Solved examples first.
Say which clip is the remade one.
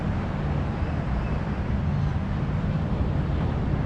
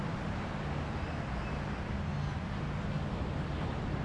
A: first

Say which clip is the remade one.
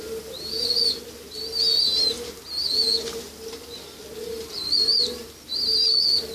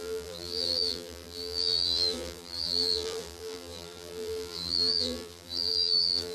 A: second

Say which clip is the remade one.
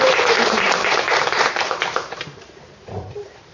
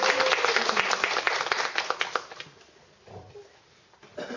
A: first